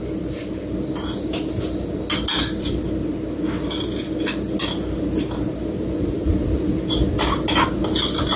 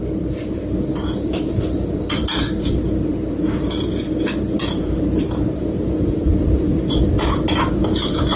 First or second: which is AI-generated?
second